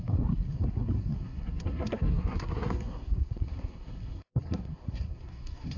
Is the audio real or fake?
fake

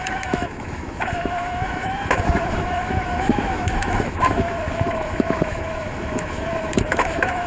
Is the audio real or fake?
fake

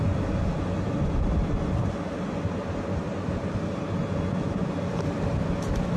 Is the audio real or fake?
real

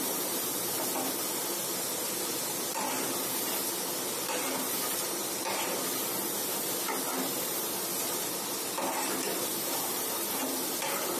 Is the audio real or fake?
real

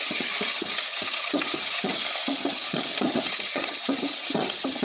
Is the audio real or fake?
fake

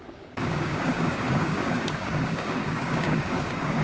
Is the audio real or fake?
fake